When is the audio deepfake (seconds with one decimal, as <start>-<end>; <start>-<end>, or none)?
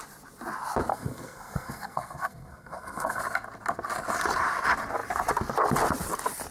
0.9-3.2